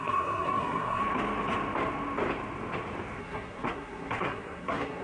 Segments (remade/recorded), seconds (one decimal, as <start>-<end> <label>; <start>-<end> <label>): 0.0-1.0 remade; 1.0-3.2 recorded; 3.2-5.0 remade